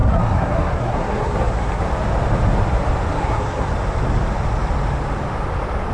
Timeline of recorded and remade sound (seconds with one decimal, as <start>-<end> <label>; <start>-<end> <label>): 0.0-1.8 remade; 1.8-3.1 recorded; 3.1-3.7 remade; 3.7-5.9 recorded